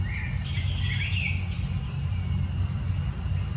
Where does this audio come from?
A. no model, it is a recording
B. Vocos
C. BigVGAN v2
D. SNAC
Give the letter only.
A